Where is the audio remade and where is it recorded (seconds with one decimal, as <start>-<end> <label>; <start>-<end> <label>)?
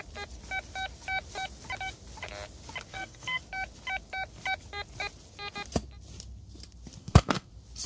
0.0-2.9 recorded; 2.9-3.4 remade; 3.4-7.0 recorded; 7.0-7.5 remade; 7.5-7.9 recorded